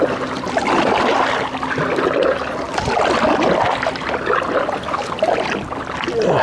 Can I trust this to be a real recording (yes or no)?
yes